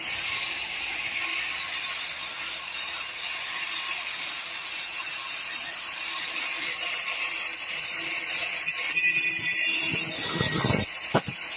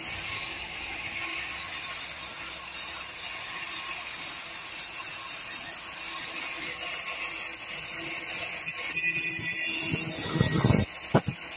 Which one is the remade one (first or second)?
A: first